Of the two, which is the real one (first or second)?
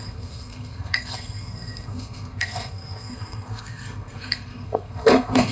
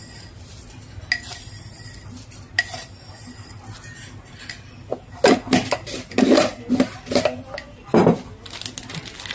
second